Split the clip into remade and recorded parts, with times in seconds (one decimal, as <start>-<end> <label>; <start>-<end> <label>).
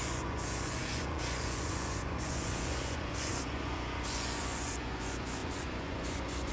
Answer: 0.0-6.5 remade